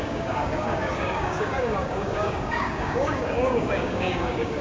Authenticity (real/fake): fake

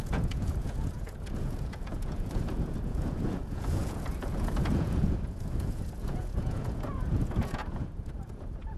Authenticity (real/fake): fake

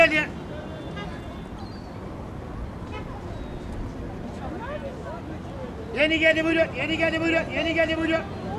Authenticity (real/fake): real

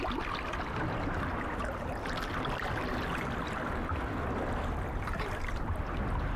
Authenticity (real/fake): real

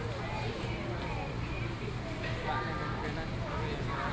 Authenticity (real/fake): real